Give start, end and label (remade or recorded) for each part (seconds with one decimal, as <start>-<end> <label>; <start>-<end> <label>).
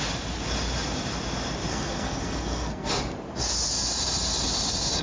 0.0-1.7 recorded; 1.7-2.9 remade; 2.9-5.0 recorded